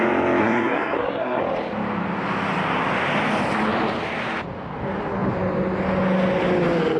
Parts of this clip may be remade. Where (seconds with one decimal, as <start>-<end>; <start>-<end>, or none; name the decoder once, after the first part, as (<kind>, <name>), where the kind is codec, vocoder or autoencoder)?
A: 0.4-1.4 (codec, SNAC)